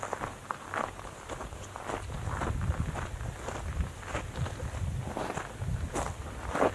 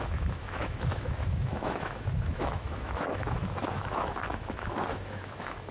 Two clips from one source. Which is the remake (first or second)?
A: second